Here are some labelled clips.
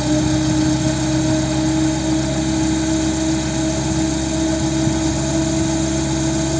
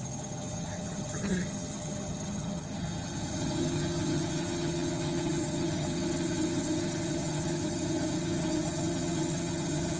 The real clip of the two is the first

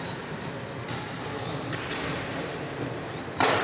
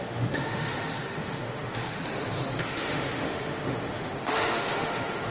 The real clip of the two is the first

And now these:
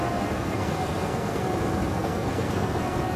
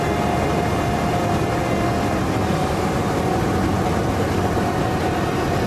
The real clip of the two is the second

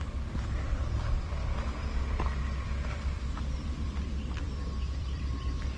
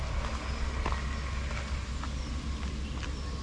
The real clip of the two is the second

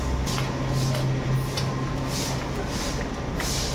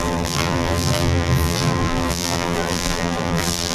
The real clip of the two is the first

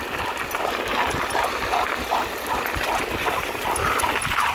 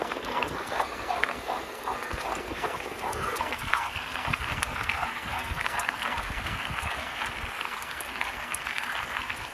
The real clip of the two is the first